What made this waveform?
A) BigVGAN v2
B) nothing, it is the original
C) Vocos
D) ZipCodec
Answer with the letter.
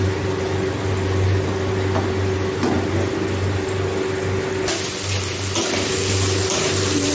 B